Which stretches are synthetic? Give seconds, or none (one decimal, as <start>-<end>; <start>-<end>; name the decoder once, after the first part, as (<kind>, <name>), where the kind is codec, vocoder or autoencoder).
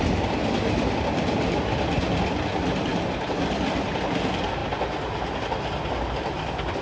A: 2.9-4.0 (vocoder, BigVGAN v2)